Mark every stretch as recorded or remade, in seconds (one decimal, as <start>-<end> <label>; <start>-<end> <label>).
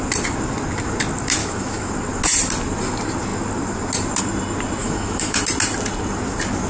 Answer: 0.0-1.4 recorded; 1.4-1.9 remade; 1.9-4.8 recorded; 4.8-5.4 remade; 5.4-6.7 recorded